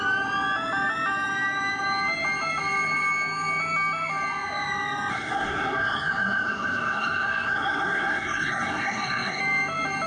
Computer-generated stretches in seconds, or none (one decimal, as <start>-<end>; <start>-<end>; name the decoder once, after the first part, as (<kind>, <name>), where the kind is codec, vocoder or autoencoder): 5.1-9.4 (codec, SNAC)